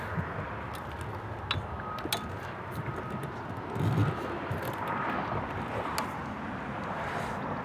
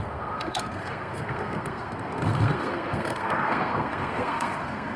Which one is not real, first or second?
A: second